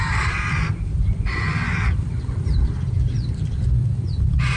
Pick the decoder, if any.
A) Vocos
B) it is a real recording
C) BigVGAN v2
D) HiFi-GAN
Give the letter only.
C